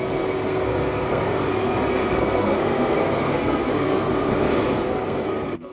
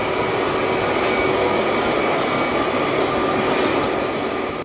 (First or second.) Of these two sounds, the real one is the second